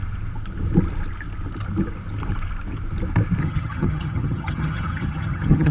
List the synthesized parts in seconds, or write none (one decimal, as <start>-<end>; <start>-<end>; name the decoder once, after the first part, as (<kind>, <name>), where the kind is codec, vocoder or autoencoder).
3.4-5.7 (vocoder, HiFi-GAN)